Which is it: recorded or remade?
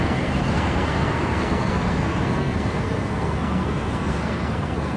remade